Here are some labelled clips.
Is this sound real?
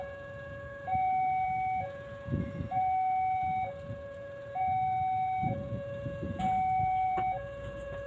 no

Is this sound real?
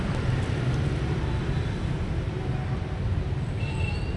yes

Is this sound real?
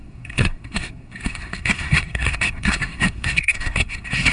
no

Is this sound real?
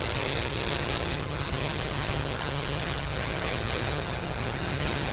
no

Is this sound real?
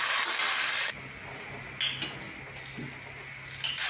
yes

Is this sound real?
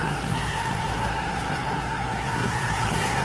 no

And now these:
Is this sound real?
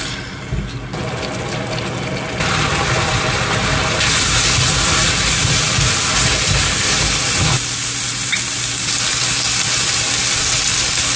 yes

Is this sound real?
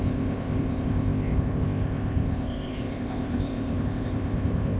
no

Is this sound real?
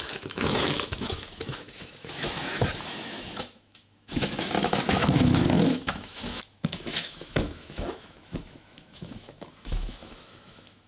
no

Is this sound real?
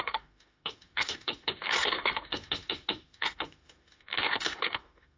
no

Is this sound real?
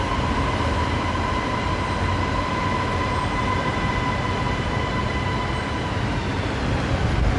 yes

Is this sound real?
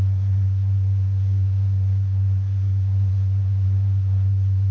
no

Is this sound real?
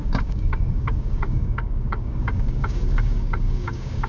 no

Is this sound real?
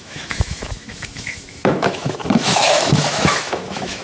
no